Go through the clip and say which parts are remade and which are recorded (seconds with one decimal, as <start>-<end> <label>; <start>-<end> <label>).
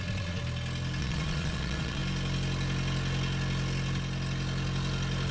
0.0-0.4 remade; 0.4-1.0 recorded; 1.0-2.0 remade; 2.0-5.3 recorded